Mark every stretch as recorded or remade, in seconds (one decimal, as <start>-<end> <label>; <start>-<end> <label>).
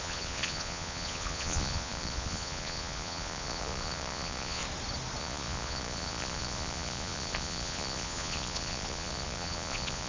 0.0-4.6 remade; 4.6-5.2 recorded; 5.2-10.1 remade